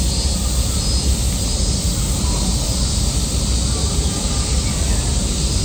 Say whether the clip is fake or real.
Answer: real